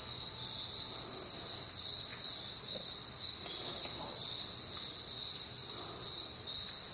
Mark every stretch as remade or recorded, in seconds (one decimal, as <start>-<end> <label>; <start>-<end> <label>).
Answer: 0.0-6.9 recorded